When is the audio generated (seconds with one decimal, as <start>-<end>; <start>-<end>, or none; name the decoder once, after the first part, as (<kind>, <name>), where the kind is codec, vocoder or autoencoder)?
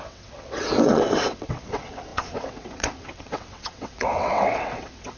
0.0-5.2 (vocoder, WaveNeXt)